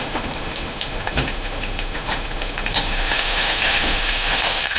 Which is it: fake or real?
fake